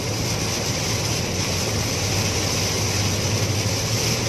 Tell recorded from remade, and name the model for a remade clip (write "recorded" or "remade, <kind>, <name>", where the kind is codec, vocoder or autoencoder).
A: recorded